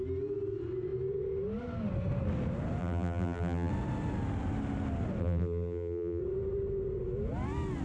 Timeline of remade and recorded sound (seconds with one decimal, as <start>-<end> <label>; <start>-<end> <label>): 0.0-2.8 recorded; 2.8-3.7 remade; 3.7-5.2 recorded; 5.2-6.2 remade; 6.2-7.8 recorded